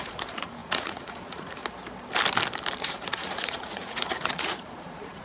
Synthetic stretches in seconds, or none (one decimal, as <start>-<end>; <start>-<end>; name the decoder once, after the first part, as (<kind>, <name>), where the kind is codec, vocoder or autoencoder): 0.0-1.6 (vocoder, Vocos); 2.8-5.2